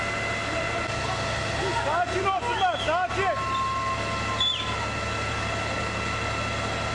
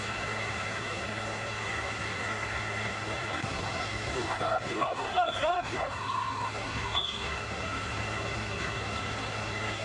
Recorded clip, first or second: first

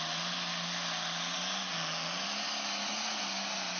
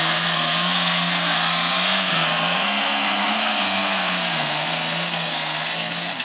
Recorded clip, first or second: first